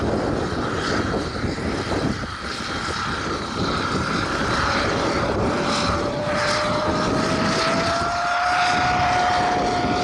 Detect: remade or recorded recorded